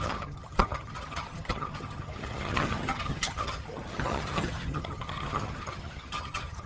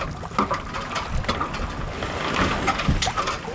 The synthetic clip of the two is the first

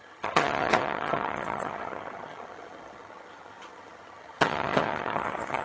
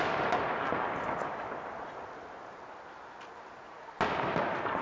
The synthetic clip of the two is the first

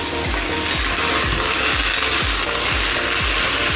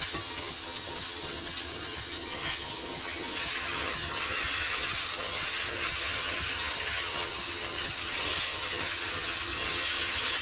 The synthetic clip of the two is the second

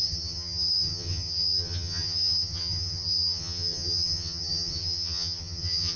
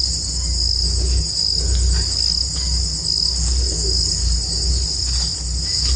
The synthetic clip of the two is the first